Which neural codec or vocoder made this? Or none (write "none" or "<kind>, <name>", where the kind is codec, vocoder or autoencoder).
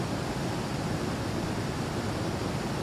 none